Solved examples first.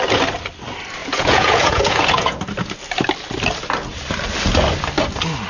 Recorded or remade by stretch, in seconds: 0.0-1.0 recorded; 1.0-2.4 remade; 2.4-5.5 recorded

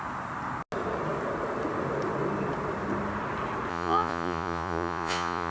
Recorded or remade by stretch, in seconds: 0.0-3.7 recorded; 3.7-5.5 remade

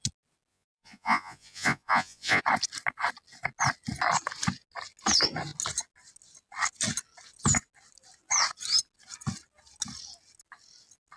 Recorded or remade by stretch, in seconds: 0.0-0.5 recorded; 0.5-2.4 remade; 2.4-11.2 recorded

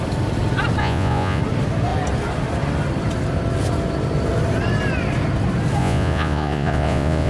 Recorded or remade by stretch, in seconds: 0.0-0.8 recorded; 0.8-1.4 remade; 1.4-5.8 recorded; 5.8-7.3 remade

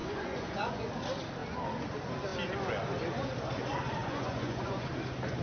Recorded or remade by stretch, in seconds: 0.0-0.9 remade; 0.9-4.0 recorded; 4.0-4.9 remade; 4.9-5.4 recorded